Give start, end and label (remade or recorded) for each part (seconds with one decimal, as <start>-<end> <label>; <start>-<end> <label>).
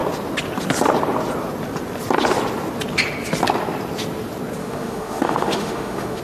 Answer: 0.0-4.6 recorded; 4.6-6.2 remade